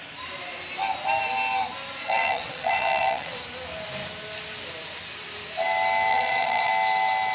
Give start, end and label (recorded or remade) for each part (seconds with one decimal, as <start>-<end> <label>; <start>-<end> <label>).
0.0-2.0 recorded; 2.0-3.4 remade; 3.4-6.1 recorded; 6.1-6.7 remade; 6.7-7.3 recorded